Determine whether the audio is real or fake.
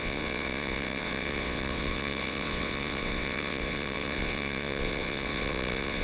fake